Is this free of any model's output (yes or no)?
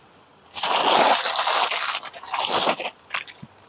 yes